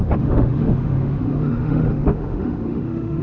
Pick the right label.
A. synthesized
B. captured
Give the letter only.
A